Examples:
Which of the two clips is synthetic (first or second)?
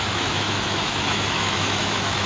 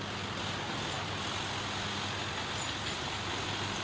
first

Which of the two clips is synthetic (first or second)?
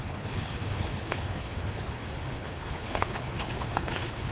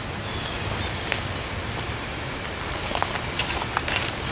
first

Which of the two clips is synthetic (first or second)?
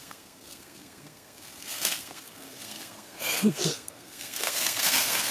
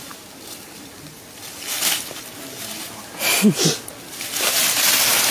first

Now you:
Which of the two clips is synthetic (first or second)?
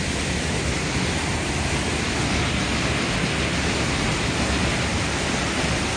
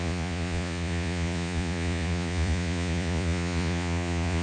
second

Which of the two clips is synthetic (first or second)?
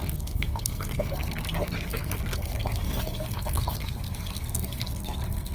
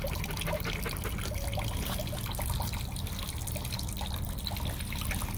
first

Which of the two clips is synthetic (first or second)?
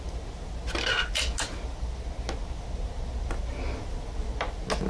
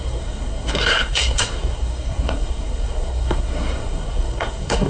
second